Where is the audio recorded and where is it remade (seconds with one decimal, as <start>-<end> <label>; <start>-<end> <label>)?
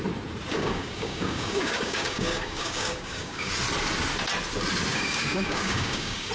0.0-0.5 recorded; 0.5-3.5 remade; 3.5-4.9 recorded; 4.9-6.3 remade